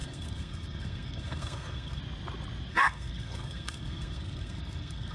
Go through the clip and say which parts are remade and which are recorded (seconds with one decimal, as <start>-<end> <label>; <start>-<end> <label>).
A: 0.0-2.0 remade; 2.0-2.7 recorded; 2.7-5.1 remade